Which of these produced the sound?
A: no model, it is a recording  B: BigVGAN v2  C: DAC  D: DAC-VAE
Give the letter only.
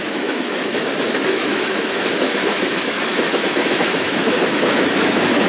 D